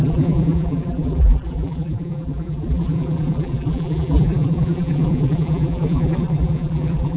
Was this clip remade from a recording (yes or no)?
yes